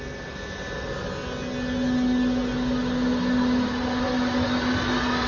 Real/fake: real